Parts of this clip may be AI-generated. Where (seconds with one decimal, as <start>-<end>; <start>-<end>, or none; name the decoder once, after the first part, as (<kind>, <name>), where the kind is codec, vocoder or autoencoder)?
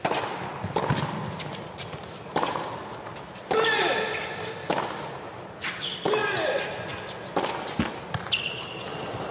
none